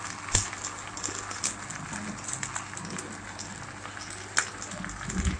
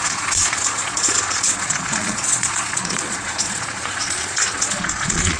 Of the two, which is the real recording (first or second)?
first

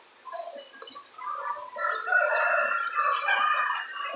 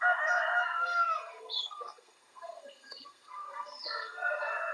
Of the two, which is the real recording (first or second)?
first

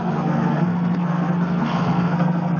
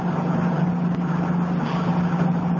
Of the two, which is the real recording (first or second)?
second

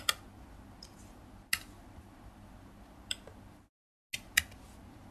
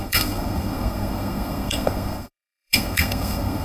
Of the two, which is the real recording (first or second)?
first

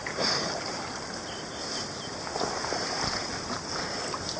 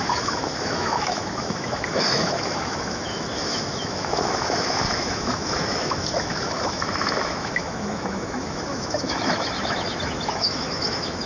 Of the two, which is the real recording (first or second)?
first